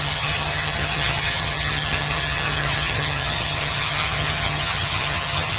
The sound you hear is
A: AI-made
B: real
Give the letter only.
A